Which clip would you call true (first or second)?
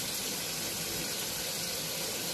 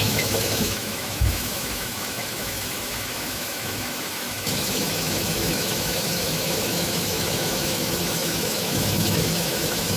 first